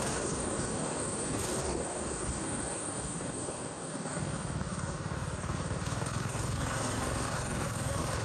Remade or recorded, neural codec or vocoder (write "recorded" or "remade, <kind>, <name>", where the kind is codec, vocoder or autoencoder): remade, codec, DAC